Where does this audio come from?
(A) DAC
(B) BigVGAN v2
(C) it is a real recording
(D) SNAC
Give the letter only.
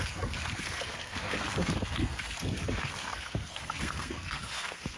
D